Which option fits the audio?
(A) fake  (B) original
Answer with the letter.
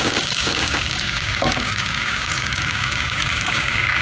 A